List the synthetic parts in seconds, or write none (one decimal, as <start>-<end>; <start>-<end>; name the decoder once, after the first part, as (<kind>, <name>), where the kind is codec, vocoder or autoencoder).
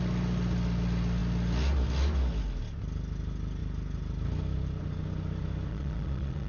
5.7-6.5 (vocoder, Vocos)